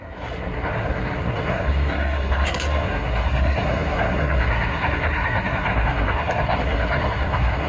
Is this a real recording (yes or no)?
no